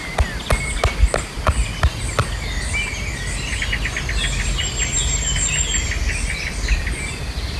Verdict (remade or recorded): recorded